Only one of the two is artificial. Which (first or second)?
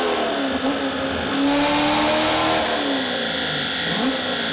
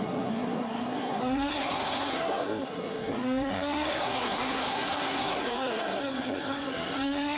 second